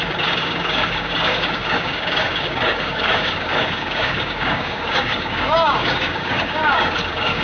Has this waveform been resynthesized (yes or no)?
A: yes